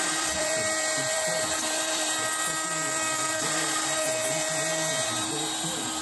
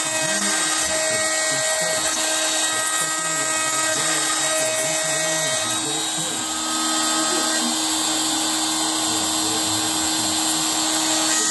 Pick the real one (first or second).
second